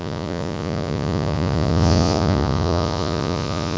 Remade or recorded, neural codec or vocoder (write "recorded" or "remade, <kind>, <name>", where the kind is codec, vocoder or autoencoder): remade, vocoder, Vocos